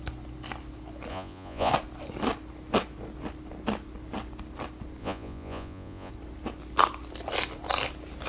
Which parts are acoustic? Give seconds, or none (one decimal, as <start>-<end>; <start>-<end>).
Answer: 0.0-1.1; 1.7-5.0; 6.1-8.3